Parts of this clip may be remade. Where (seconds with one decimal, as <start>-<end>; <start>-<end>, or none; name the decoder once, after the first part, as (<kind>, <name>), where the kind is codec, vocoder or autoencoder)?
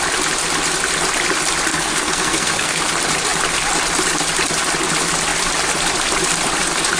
1.7-2.8 (codec, SNAC)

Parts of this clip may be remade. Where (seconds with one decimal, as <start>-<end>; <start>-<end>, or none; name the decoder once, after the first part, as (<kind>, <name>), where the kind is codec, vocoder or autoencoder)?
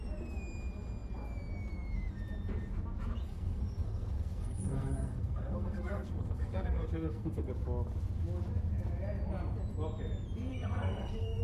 3.2-7.5 (codec, SNAC); 10.5-11.4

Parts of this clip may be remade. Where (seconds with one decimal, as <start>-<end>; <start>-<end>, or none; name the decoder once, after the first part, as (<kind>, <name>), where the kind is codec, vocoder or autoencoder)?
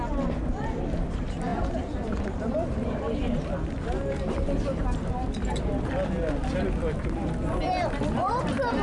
1.5-3.0 (vocoder, BigVGAN v2)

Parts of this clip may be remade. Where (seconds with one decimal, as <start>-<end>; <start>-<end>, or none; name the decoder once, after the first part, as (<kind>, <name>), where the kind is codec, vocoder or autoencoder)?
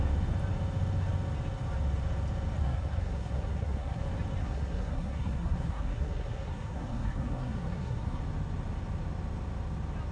2.6-4.0 (codec, SNAC); 4.4-8.2